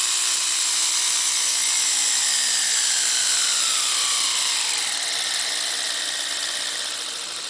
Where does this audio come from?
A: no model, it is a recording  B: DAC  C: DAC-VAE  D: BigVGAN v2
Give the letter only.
A